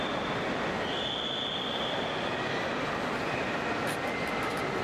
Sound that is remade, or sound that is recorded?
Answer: recorded